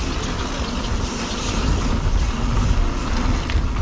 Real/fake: real